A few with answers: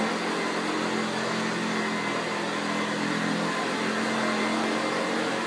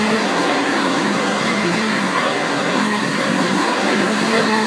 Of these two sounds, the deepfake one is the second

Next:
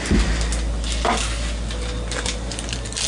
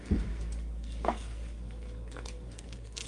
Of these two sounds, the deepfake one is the second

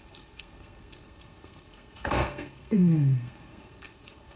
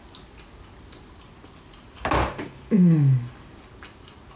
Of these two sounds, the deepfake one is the first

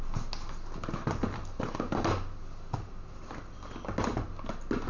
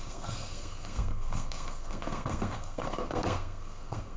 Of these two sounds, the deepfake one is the second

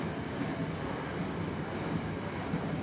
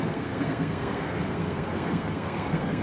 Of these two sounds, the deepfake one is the second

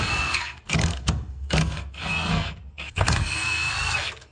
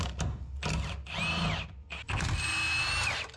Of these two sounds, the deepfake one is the first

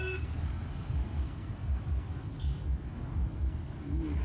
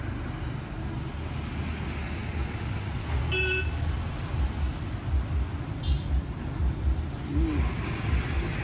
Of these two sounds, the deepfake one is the first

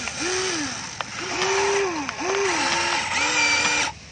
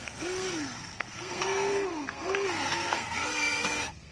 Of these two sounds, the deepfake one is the second